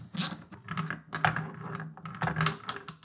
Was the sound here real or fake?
real